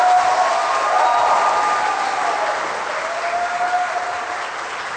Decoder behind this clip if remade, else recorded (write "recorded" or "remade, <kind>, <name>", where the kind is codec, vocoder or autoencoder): recorded